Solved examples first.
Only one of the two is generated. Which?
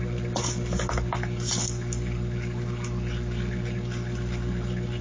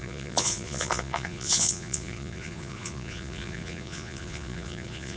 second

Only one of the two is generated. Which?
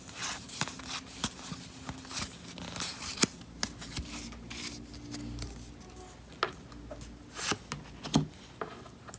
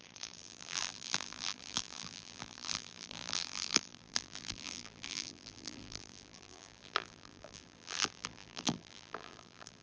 second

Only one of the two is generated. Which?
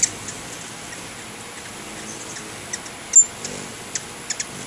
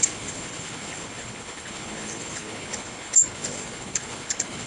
second